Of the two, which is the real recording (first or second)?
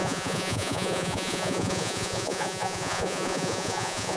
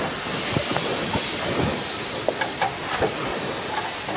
second